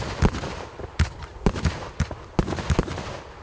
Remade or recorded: recorded